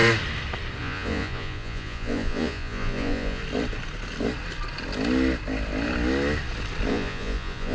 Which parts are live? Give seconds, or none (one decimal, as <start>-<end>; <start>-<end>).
0.0-0.8; 3.4-6.9